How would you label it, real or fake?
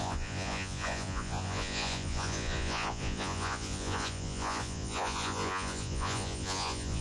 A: fake